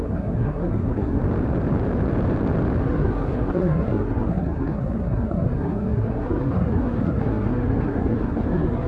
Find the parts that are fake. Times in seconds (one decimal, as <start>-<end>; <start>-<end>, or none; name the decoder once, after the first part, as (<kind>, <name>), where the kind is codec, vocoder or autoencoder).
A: 0.0-1.2 (codec, SNAC); 2.8-8.9